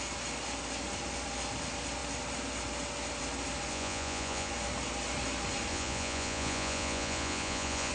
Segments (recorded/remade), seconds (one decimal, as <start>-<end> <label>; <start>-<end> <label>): 0.0-3.7 recorded; 3.7-4.5 remade; 4.5-5.7 recorded; 5.7-7.9 remade